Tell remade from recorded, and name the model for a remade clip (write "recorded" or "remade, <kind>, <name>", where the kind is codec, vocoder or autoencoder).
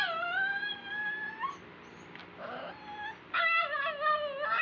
recorded